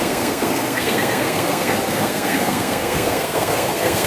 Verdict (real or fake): fake